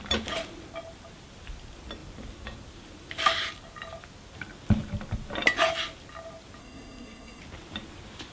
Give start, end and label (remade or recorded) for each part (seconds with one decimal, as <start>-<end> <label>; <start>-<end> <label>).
0.0-6.6 recorded; 6.6-7.4 remade; 7.4-8.3 recorded